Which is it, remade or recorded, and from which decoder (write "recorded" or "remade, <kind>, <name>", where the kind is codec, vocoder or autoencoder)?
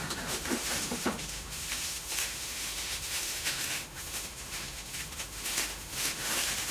remade, autoencoder, DAC-VAE